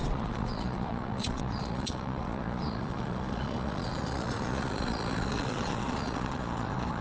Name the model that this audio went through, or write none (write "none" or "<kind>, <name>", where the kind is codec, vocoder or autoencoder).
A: vocoder, Vocos